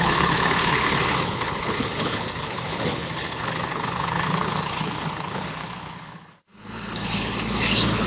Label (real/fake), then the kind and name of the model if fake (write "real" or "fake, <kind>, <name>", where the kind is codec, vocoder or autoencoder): fake, codec, HILCodec